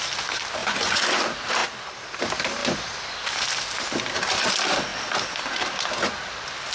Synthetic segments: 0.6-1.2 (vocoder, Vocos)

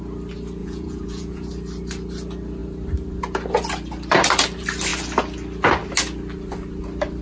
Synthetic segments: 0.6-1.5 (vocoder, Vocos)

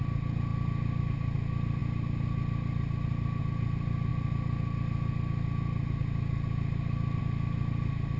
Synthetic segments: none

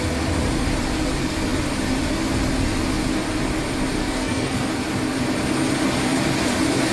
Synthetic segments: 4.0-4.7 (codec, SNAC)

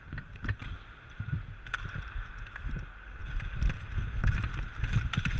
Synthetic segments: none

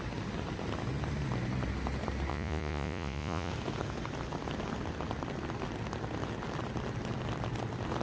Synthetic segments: 2.3-3.5 (vocoder, Vocos)

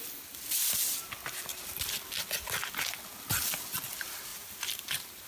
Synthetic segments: 4.3-5.3 (vocoder, BigVGAN v2)

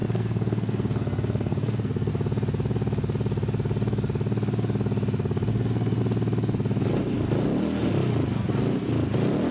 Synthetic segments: 0.0-2.1 (codec, SNAC); 5.5-6.0